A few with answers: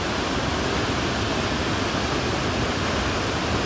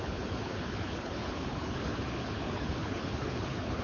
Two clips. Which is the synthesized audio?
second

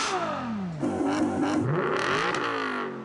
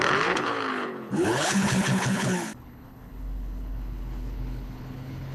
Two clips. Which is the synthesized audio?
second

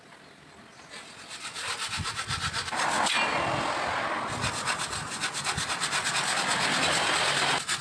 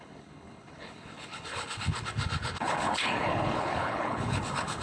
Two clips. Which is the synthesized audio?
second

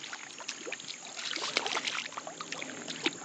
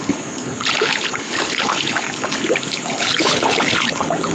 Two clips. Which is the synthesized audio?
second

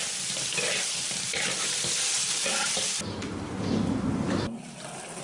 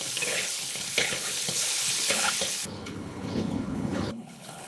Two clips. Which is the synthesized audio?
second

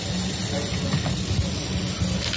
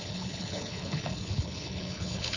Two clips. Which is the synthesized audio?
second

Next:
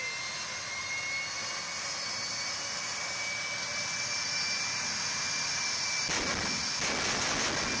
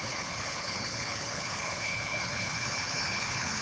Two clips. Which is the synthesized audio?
second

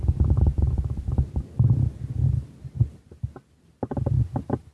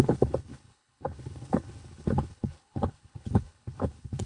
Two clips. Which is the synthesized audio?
second